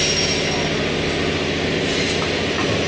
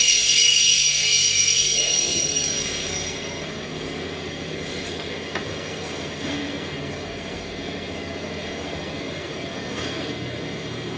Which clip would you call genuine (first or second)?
first